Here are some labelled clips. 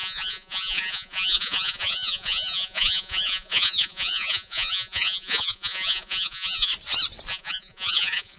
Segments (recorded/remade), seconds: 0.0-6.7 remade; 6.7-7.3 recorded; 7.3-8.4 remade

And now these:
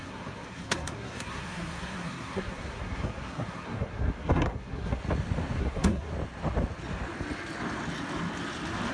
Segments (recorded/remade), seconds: 0.0-5.0 remade; 5.0-5.6 recorded; 5.6-6.1 remade; 6.1-8.9 recorded

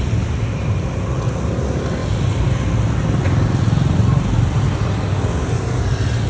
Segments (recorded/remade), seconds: 0.0-6.3 recorded